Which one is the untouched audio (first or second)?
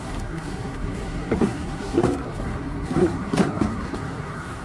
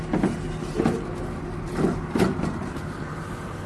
second